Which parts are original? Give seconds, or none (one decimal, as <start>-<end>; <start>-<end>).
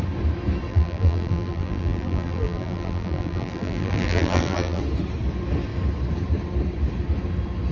0.0-0.7; 4.8-7.7